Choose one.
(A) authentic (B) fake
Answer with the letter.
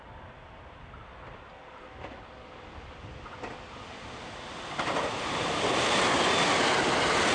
A